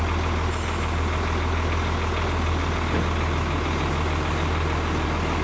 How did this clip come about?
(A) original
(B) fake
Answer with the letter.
A